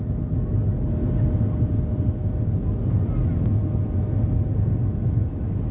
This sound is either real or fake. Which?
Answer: real